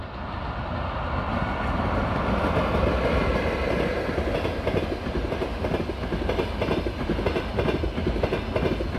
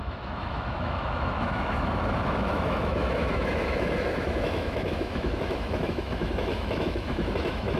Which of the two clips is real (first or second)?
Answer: first